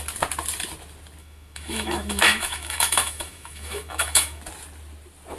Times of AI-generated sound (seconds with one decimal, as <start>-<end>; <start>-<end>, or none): 1.2-4.4